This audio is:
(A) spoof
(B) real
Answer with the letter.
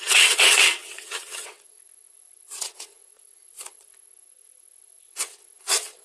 A